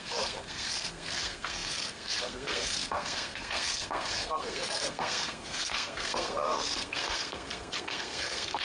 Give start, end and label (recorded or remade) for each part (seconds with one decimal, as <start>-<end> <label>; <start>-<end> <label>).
0.0-8.6 remade